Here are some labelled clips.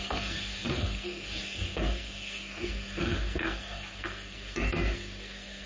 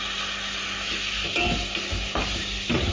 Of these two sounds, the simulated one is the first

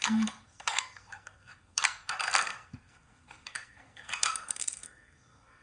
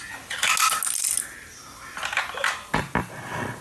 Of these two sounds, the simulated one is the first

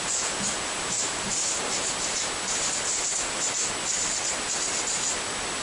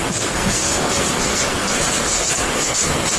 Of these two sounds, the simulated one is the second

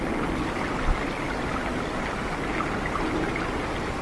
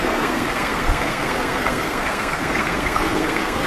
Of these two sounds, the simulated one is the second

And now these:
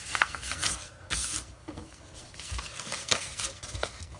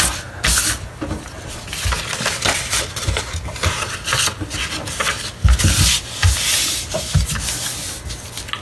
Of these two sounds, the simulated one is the first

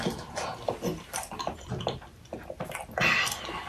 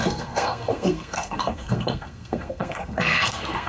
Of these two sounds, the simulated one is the second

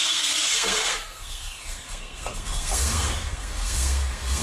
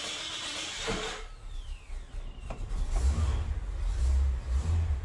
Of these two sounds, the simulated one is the first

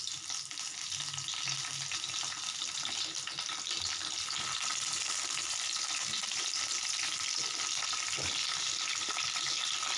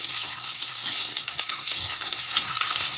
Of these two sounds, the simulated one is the second